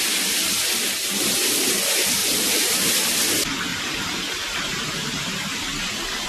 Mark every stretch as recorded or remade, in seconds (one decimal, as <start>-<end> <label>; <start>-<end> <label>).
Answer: 0.0-2.2 recorded; 2.2-2.9 remade; 2.9-3.7 recorded; 3.7-5.6 remade; 5.6-6.3 recorded